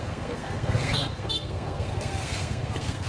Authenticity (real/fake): fake